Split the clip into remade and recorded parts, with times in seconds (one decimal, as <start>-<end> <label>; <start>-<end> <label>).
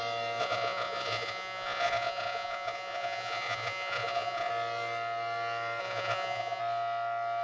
0.0-0.4 recorded; 0.4-4.5 remade; 4.5-5.8 recorded; 5.8-6.6 remade; 6.6-7.4 recorded